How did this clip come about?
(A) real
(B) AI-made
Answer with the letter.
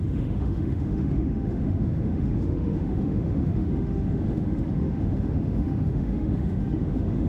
B